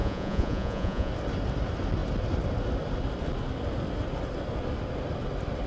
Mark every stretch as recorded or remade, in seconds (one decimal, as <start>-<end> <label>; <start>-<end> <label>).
0.0-1.1 remade; 1.1-5.7 recorded

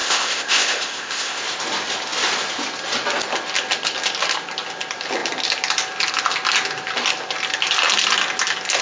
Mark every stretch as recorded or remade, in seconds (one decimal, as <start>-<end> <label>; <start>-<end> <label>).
0.0-1.4 remade; 1.4-8.8 recorded

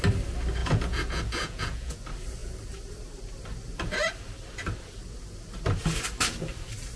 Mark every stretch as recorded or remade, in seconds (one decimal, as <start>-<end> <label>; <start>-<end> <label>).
0.0-0.6 recorded; 0.6-2.0 remade; 2.0-7.0 recorded

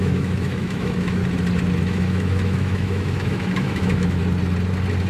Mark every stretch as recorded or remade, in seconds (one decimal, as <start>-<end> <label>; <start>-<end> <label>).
0.0-1.2 remade; 1.2-1.8 recorded; 1.8-4.2 remade; 4.2-5.1 recorded

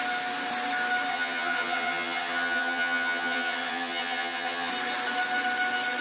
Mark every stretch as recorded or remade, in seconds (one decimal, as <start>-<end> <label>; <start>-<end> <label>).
0.0-1.1 recorded; 1.1-4.7 remade; 4.7-6.0 recorded